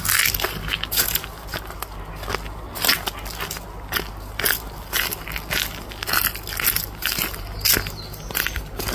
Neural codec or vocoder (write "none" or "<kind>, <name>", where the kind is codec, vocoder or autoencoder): none